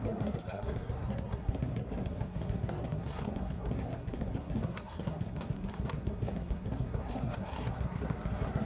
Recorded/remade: remade